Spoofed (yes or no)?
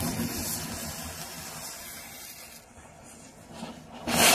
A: no